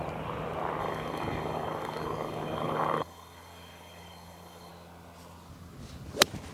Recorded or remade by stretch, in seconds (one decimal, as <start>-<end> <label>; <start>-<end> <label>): 0.0-0.8 recorded; 0.8-4.7 remade; 4.7-6.5 recorded